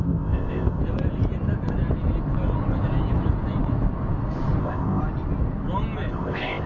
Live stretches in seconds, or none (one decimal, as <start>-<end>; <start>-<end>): 0.8-4.6; 5.0-6.1